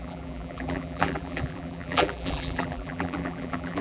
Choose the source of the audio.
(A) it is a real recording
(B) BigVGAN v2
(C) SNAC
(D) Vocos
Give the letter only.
B